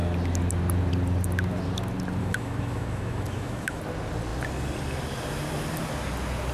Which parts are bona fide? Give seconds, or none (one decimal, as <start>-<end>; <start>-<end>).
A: 0.0-2.2; 3.8-6.5